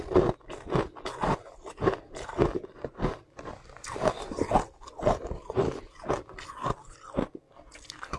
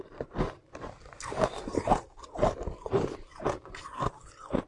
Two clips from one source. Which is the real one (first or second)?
first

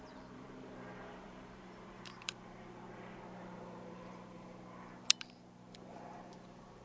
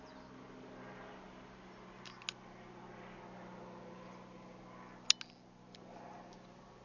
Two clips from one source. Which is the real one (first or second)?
second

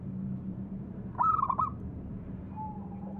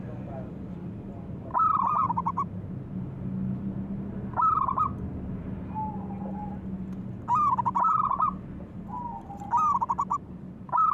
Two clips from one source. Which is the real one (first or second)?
second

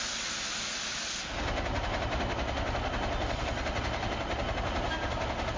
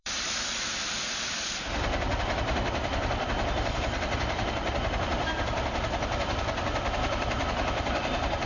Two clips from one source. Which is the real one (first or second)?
first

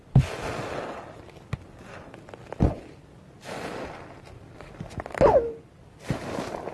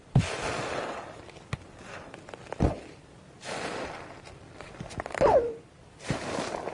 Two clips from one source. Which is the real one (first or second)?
first